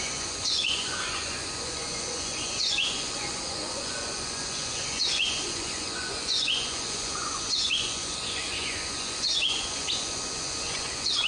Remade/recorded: remade